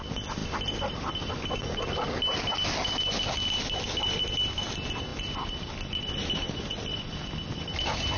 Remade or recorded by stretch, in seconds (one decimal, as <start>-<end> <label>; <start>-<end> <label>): 0.0-0.4 recorded; 0.4-1.1 remade; 1.1-5.1 recorded; 5.1-7.3 remade; 7.3-8.2 recorded